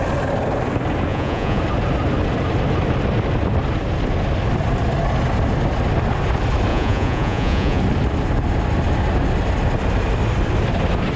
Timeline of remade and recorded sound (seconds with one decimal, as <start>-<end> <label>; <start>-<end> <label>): 0.0-1.1 recorded; 1.1-1.6 remade; 1.6-6.7 recorded; 6.7-7.8 remade; 7.8-11.2 recorded